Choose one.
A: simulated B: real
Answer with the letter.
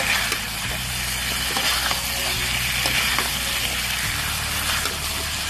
B